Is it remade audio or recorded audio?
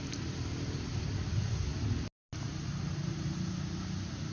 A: recorded